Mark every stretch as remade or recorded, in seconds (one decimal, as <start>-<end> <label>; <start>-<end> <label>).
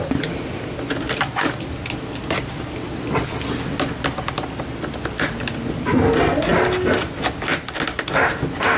0.0-8.8 recorded